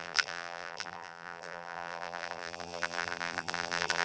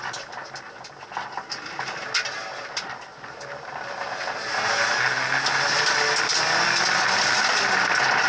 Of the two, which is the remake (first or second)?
first